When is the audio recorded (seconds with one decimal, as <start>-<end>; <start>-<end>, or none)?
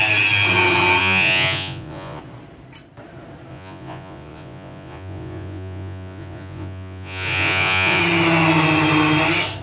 0.0-1.0; 2.2-3.5; 8.0-9.6